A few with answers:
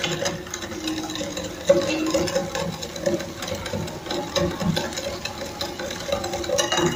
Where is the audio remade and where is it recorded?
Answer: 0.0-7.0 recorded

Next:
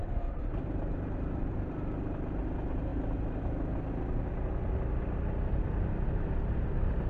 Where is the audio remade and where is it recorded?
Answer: 0.0-7.1 recorded

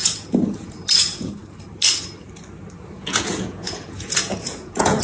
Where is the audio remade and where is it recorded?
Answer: 0.0-1.4 remade; 1.4-2.9 recorded; 2.9-5.0 remade

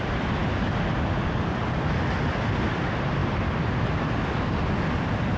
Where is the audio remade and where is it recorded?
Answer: 0.0-5.4 recorded

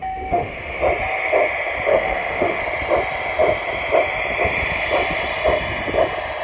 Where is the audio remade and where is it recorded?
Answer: 0.0-0.8 remade; 0.8-1.9 recorded; 1.9-2.6 remade; 2.6-6.4 recorded